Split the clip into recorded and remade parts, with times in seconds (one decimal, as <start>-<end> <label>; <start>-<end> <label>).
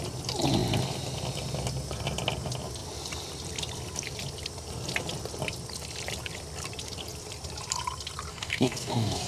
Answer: 0.0-8.3 recorded; 8.3-9.3 remade